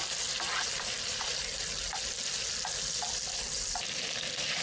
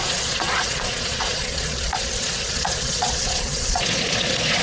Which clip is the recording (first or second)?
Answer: first